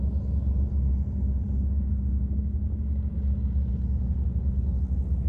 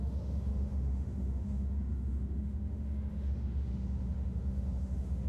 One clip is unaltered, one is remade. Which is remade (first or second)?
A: second